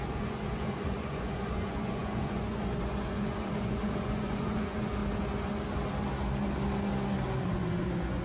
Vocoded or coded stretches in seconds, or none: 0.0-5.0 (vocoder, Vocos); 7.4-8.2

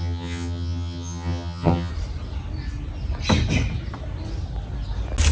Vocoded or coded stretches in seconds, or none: 0.0-1.9 (vocoder, HiFi-GAN)

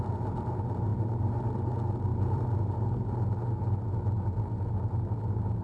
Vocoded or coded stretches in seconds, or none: 0.9-1.7 (vocoder, BigVGAN v2); 2.1-3.1

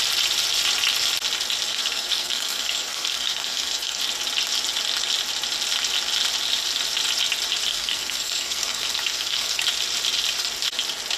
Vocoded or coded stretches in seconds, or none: 1.7-4.0 (codec, SNAC); 7.7-9.6

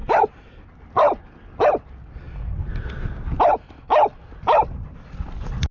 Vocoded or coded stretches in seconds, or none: 0.0-3.4 (vocoder, BigVGAN v2)

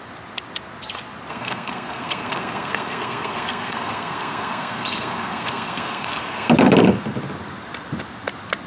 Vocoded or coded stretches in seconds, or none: 1.3-6.5 (codec, SNAC)